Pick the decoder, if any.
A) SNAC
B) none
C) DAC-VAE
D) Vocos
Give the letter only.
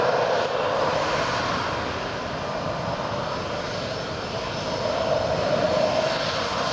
B